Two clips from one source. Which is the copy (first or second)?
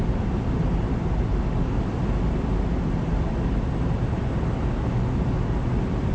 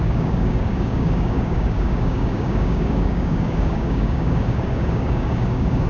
second